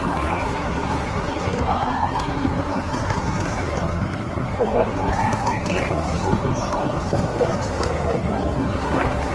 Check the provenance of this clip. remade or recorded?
remade